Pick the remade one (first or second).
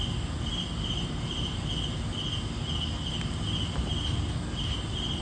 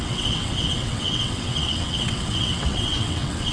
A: second